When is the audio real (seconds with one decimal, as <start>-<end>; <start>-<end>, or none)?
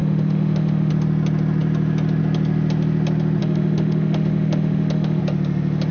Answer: 0.9-3.4; 5.2-5.9